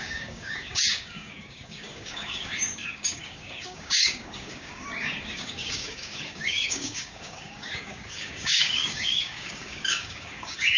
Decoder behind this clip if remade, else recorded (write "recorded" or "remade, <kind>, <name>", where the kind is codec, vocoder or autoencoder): remade, codec, DAC